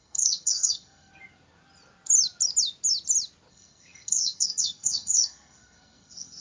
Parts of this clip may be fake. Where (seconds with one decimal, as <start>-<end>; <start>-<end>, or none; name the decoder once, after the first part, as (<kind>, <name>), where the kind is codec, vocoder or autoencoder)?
0.0-1.1 (codec, SNAC); 3.5-6.4